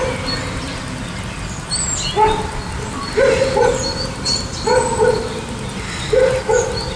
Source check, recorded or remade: recorded